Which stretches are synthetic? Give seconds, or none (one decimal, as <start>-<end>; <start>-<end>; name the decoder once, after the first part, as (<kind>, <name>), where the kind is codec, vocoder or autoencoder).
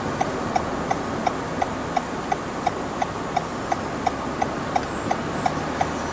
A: none